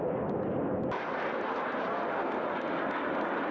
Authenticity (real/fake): real